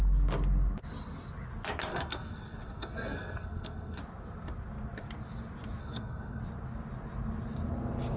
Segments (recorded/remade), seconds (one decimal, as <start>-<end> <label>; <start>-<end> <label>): 0.0-1.9 recorded; 1.9-4.0 remade; 4.0-5.8 recorded; 5.8-6.4 remade; 6.4-8.2 recorded